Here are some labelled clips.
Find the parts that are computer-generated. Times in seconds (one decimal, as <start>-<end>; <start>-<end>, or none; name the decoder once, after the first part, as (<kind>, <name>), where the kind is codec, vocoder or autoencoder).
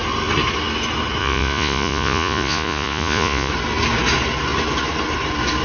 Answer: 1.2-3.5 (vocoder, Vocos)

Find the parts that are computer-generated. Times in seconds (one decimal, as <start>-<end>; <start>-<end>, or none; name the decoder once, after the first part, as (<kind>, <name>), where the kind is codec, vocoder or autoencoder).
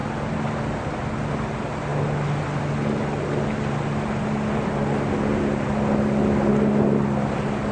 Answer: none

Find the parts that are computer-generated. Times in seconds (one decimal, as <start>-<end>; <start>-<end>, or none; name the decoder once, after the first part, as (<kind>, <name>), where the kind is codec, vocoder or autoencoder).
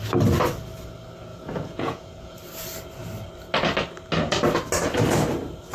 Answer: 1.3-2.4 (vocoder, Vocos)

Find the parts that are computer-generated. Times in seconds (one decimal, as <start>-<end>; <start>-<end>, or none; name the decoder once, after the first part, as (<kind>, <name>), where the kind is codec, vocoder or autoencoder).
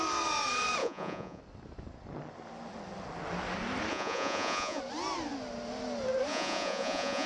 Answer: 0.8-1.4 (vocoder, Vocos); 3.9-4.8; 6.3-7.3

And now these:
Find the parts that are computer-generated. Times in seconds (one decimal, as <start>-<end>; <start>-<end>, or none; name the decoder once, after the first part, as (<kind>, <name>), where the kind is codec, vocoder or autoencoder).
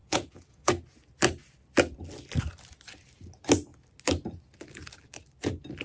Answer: 0.0-0.7 (vocoder, Vocos)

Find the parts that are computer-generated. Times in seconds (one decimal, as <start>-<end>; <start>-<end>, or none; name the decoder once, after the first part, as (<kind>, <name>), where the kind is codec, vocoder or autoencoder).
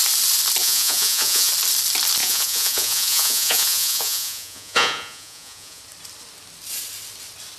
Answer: 0.6-1.5 (vocoder, Vocos); 2.2-5.8